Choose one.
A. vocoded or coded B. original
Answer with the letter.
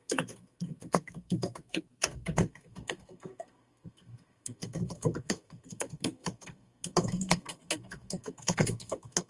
A